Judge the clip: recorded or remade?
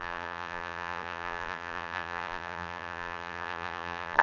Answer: remade